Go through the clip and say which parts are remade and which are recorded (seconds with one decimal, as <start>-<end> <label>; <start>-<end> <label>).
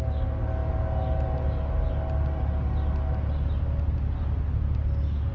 0.0-5.3 recorded